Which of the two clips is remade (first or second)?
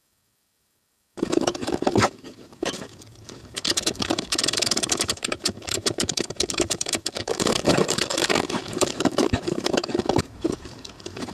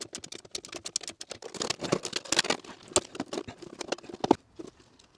first